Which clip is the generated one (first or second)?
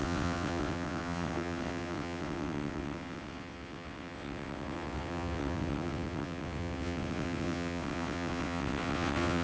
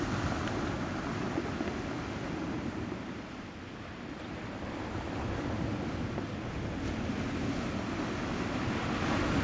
first